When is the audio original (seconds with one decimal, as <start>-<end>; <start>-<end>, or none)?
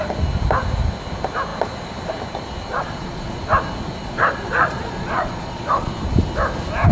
0.0-2.7; 3.4-4.0; 5.9-6.9